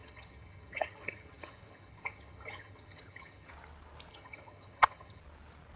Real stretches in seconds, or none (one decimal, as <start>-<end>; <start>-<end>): 3.5-4.1; 5.2-5.8

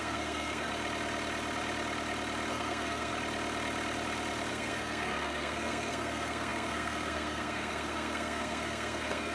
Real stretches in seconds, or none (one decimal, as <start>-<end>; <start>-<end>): 0.7-2.5; 3.1-4.5